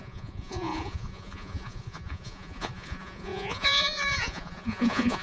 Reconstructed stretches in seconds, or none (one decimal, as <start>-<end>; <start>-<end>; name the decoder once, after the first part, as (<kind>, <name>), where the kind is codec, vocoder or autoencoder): 0.0-5.2 (vocoder, Vocos)